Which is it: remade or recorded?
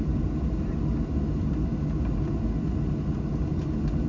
recorded